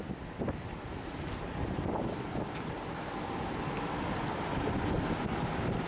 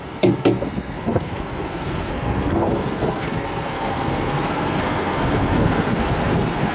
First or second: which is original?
first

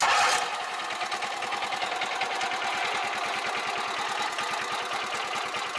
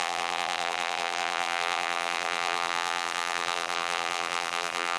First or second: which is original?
first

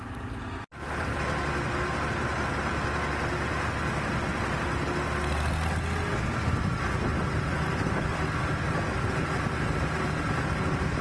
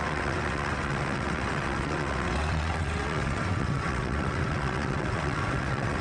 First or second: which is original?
first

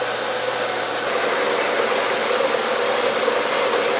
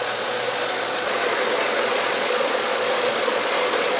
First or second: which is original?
first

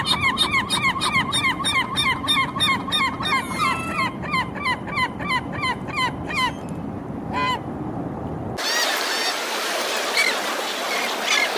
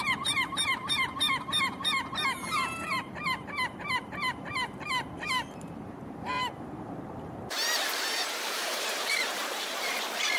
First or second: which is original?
first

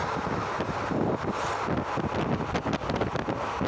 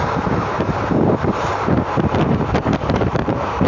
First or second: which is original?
first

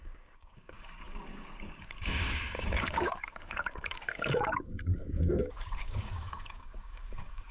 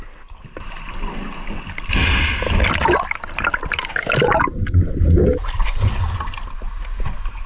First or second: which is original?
second